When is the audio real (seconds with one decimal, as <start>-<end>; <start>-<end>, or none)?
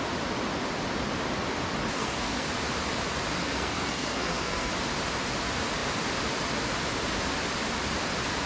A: 0.0-2.0; 2.5-3.4; 4.7-8.5